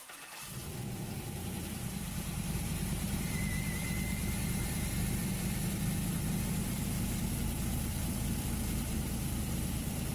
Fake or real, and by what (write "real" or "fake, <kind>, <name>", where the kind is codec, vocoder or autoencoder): fake, vocoder, BigVGAN v2